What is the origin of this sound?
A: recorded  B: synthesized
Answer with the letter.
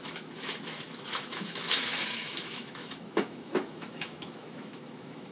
B